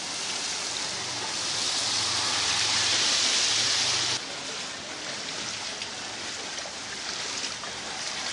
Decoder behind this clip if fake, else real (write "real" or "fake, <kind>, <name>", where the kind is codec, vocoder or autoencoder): real